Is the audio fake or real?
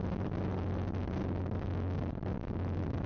real